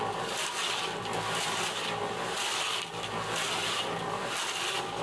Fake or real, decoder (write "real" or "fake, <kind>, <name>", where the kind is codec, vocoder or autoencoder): real